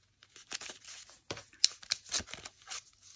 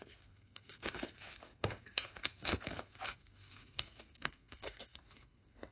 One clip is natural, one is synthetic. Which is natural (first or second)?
first